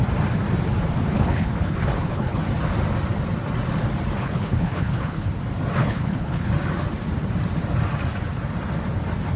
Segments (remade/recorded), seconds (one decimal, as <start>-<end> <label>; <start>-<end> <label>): 0.0-1.1 recorded; 1.1-2.4 remade; 2.4-4.2 recorded; 4.2-5.3 remade; 5.3-5.8 recorded; 5.8-6.5 remade; 6.5-9.4 recorded